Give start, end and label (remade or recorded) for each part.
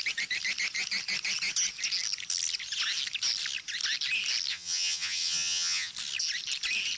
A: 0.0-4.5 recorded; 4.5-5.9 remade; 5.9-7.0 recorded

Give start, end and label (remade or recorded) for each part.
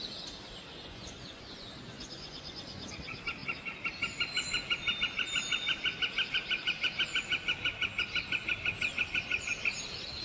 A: 0.0-0.7 recorded; 0.7-3.0 remade; 3.0-10.2 recorded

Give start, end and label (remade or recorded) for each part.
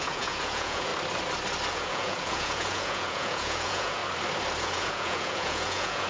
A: 0.0-0.9 remade; 0.9-1.7 recorded; 1.7-4.0 remade; 4.0-4.6 recorded; 4.6-6.1 remade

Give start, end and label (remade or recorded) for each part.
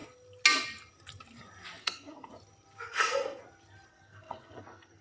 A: 0.0-1.8 recorded; 1.8-2.3 remade; 2.3-2.9 recorded; 2.9-3.4 remade; 3.4-3.9 recorded; 3.9-5.0 remade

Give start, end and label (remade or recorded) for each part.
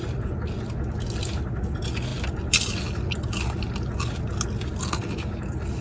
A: 0.0-5.8 recorded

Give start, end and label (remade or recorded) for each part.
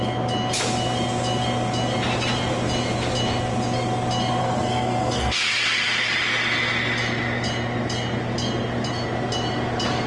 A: 0.0-4.4 recorded; 4.4-5.4 remade; 5.4-10.1 recorded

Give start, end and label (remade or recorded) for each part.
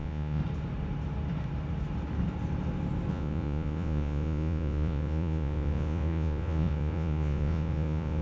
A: 0.0-0.4 remade; 0.4-3.1 recorded; 3.1-8.2 remade